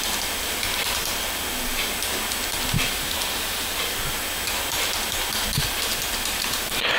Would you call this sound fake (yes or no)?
no